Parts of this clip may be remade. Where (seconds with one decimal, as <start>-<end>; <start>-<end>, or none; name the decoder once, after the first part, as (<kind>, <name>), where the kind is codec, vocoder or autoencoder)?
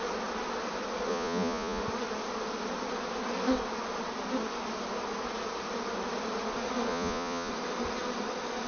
1.1-1.8 (vocoder, Vocos); 6.9-7.5